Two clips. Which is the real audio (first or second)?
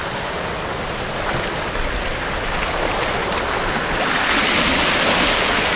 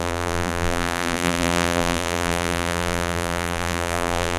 first